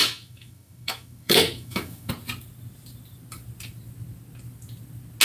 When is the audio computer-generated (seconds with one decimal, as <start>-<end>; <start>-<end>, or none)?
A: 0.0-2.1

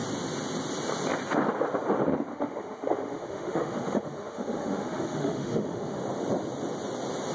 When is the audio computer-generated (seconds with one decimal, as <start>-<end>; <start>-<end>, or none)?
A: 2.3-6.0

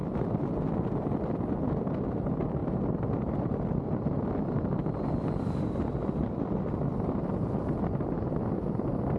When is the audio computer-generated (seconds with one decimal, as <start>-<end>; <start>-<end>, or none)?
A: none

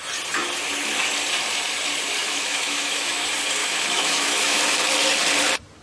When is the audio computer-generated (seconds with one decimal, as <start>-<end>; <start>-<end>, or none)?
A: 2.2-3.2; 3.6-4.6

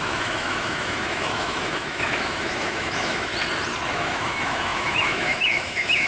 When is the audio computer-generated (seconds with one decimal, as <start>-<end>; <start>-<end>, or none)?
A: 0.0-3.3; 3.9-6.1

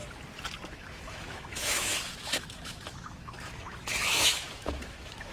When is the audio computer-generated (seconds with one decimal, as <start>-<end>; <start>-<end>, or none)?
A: 0.7-5.3